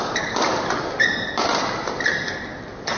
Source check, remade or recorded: recorded